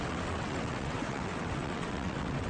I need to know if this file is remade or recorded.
remade